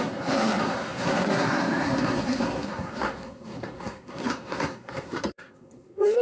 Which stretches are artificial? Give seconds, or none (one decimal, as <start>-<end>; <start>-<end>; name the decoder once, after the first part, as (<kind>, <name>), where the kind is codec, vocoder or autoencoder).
0.0-6.2 (codec, SNAC)